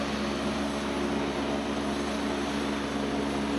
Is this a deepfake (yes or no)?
no